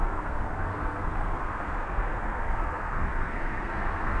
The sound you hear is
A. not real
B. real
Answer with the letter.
A